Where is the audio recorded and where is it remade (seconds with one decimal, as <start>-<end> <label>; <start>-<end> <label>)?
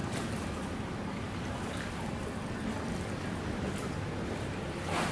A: 0.0-5.1 recorded